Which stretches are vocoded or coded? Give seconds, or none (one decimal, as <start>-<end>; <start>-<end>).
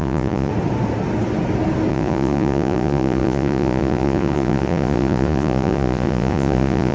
0.0-0.5; 1.9-6.9